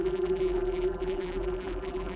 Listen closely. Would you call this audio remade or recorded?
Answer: remade